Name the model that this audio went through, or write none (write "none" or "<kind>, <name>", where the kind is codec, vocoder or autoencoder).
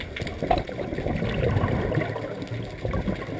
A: none